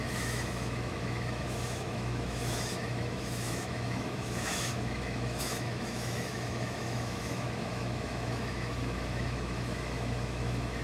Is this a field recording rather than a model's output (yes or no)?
no